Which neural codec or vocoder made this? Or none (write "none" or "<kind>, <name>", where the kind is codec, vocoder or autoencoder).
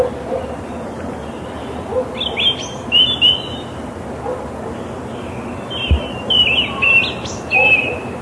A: none